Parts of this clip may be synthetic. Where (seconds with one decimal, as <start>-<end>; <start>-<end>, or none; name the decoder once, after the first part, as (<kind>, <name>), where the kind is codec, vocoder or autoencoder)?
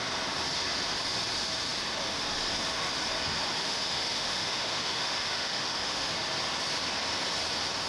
3.6-6.1 (autoencoder, DAC-VAE)